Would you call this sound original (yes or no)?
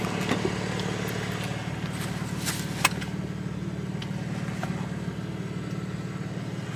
yes